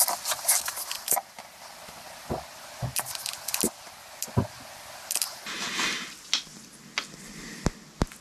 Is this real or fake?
real